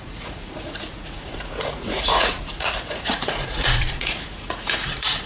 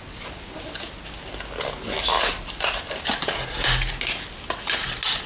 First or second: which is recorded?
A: second